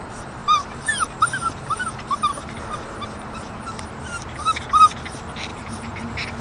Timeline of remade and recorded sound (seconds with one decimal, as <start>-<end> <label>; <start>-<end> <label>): 0.0-0.4 recorded; 0.4-3.6 remade; 3.6-5.5 recorded; 5.5-6.0 remade; 6.0-6.4 recorded